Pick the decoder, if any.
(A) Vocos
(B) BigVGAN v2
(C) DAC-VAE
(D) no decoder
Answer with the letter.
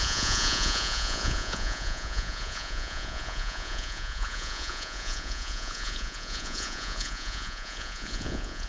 A